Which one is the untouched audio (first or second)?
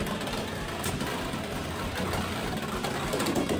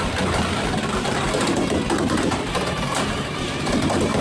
first